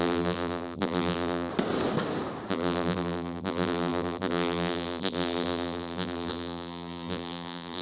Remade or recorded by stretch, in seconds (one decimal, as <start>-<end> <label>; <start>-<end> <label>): 0.0-1.5 remade; 1.5-2.5 recorded; 2.5-7.8 remade